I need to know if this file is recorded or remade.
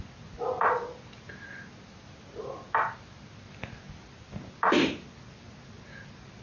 recorded